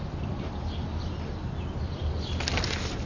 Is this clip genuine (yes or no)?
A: yes